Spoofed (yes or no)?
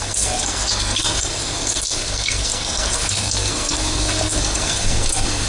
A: yes